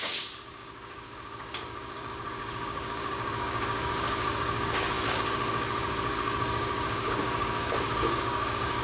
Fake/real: fake